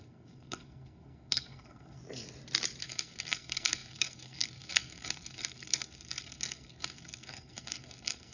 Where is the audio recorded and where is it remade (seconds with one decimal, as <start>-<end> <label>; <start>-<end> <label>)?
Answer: 0.0-2.0 remade; 2.0-2.8 recorded; 2.8-8.3 remade